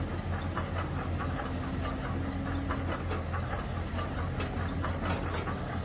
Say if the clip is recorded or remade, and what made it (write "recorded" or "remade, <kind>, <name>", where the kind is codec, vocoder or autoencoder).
recorded